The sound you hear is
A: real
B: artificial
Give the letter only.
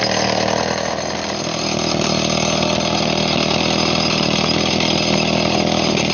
A